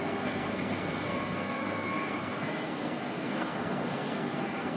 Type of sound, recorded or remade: remade